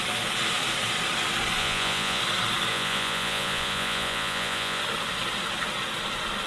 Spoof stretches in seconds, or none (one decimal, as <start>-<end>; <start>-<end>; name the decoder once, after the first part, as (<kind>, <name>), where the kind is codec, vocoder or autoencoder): 1.6-2.2 (vocoder, Vocos); 2.7-4.8